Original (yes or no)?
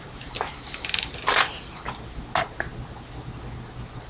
yes